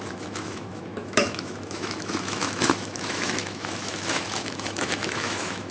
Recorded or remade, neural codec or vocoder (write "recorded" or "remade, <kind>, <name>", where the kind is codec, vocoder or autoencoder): remade, autoencoder, DAC-VAE